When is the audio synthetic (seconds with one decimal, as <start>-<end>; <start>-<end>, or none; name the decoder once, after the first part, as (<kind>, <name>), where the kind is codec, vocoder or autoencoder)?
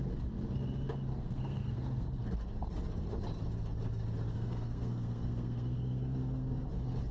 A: 1.1-2.2 (codec, SNAC); 4.3-6.6